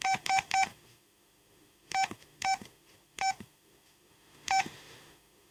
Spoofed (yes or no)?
yes